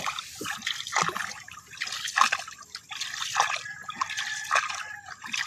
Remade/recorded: remade